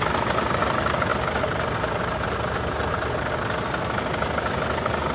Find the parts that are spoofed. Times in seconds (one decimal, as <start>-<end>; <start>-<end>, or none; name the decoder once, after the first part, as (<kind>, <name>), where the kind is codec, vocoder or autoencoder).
none